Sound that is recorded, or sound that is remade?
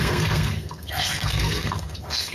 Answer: remade